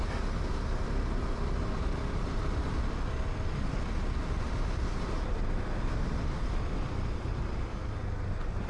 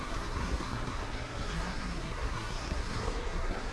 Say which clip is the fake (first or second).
second